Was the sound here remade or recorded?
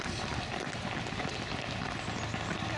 recorded